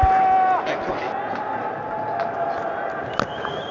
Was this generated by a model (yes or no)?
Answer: no